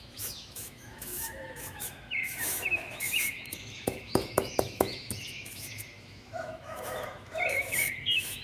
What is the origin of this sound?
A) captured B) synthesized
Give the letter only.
B